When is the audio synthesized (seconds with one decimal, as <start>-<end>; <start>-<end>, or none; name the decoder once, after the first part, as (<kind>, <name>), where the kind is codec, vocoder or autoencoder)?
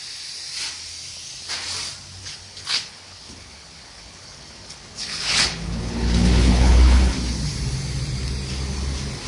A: 2.2-7.2 (codec, HILCodec)